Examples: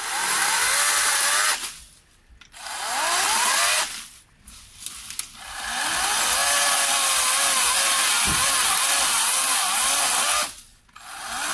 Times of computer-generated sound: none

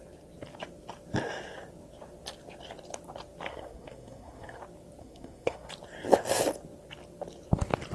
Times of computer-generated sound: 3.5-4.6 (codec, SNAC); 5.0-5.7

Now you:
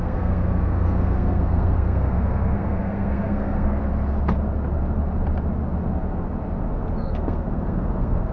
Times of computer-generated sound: 0.0-3.8 (codec, SNAC); 7.0-8.3